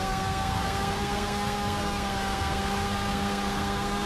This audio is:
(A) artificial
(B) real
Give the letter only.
A